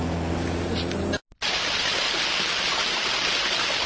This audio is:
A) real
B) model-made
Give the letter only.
A